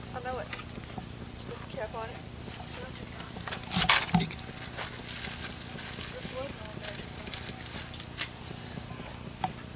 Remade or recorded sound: remade